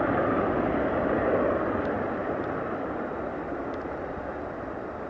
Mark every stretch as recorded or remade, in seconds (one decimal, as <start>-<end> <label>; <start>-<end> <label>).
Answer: 0.0-5.1 recorded